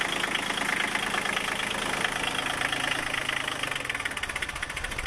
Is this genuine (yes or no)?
yes